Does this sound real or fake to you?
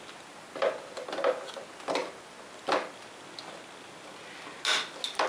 real